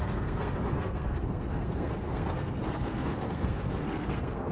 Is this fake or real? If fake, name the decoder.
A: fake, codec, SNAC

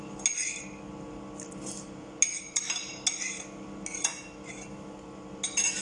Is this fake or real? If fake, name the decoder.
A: real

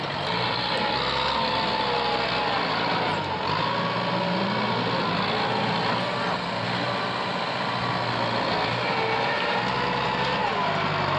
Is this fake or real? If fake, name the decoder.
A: real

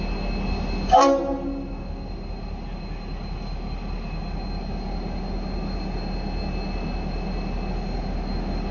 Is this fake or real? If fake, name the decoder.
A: real